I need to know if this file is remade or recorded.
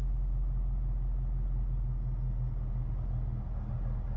recorded